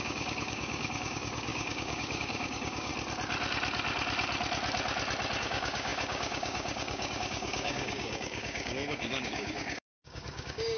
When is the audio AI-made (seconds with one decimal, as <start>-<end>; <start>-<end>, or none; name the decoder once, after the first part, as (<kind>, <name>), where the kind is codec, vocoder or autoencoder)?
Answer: 0.0-2.9 (codec, DAC); 5.4-10.8

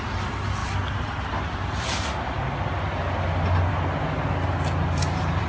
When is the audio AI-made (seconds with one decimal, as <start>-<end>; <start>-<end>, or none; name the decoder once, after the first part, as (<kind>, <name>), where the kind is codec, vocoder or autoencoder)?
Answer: none

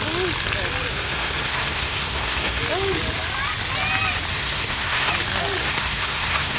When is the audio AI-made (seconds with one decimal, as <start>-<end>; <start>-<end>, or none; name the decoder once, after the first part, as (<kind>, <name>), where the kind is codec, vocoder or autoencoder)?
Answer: 0.9-2.6 (codec, SNAC); 4.3-5.1; 5.6-6.6

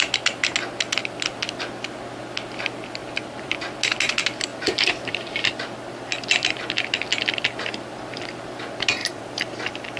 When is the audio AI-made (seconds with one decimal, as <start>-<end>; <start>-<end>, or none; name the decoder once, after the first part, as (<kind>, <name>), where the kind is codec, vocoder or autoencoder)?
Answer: 3.0-3.8 (vocoder, BigVGAN v2); 4.5-5.5; 9.0-9.5

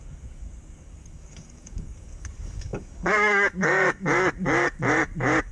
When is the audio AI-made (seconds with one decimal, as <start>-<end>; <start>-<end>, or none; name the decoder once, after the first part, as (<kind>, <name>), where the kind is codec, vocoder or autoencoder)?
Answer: 0.0-5.5 (codec, DAC)

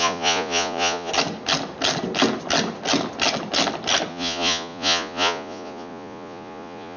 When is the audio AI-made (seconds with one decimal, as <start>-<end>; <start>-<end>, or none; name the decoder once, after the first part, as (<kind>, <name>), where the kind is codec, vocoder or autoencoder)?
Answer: 0.0-1.1 (vocoder, Vocos); 4.1-7.0

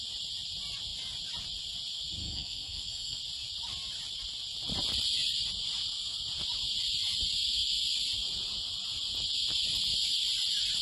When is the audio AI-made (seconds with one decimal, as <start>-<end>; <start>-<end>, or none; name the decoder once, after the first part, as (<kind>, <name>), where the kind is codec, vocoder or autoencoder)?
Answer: 2.2-3.2 (codec, SNAC)

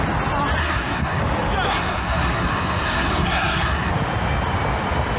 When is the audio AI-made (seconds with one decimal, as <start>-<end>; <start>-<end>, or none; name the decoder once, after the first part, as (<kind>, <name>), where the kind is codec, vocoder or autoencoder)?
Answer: 0.6-1.2 (codec, SNAC); 1.7-3.9